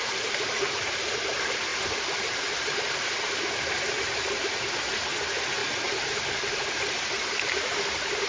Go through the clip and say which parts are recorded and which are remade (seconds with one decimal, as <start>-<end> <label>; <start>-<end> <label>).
0.0-1.7 recorded; 1.7-2.9 remade; 2.9-5.6 recorded; 5.6-6.7 remade; 6.7-8.3 recorded